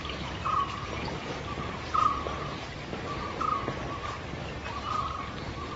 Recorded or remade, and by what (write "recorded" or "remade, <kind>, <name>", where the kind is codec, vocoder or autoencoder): recorded